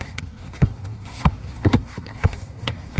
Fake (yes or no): yes